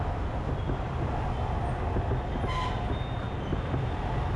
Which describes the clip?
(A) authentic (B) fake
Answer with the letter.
A